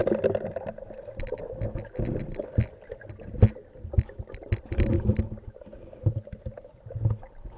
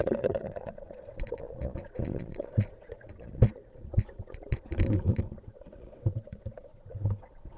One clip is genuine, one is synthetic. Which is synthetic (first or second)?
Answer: second